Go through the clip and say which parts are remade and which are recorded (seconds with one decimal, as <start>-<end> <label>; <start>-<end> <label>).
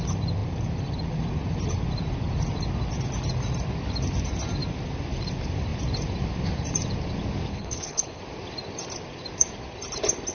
0.0-7.5 recorded; 7.5-8.2 remade; 8.2-10.3 recorded